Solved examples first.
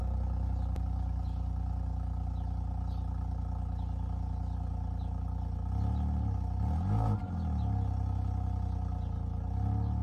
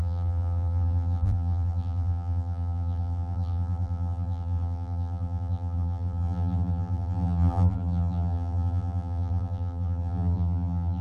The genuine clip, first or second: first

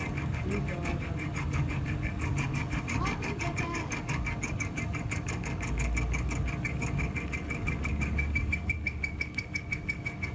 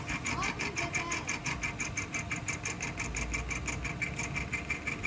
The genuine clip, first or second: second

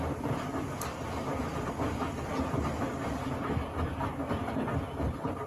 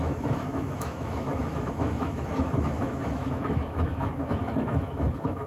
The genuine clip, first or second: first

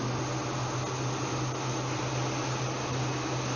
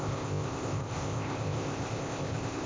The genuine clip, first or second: first